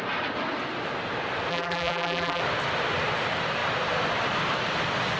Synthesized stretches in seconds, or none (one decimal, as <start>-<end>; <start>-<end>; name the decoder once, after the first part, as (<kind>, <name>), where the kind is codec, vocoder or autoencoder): 1.5-2.4 (vocoder, BigVGAN v2)